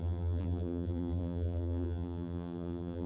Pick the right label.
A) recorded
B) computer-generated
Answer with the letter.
B